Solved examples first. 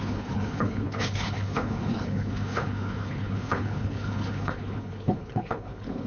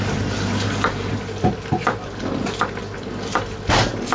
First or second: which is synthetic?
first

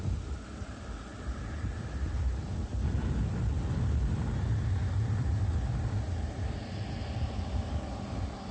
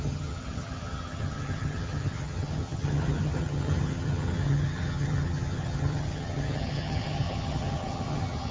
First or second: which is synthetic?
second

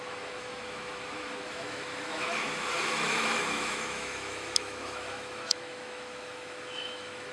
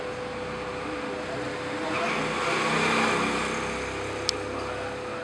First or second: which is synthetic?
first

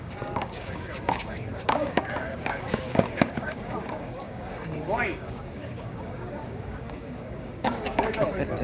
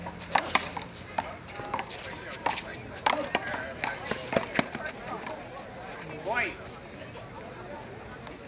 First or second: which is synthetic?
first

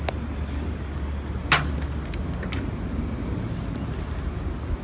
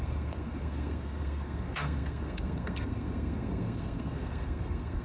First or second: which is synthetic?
second